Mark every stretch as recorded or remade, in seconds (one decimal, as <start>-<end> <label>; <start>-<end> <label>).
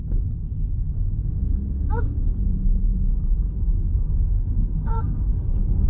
0.0-3.1 recorded; 3.1-5.9 remade